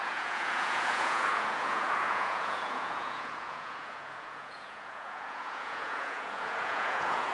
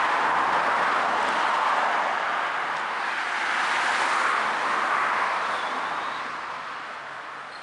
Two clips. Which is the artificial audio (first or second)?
first